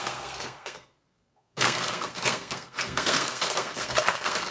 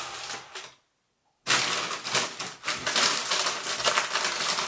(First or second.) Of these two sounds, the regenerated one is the first